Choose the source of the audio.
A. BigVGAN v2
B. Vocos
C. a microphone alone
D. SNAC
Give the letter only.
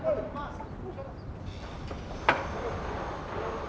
C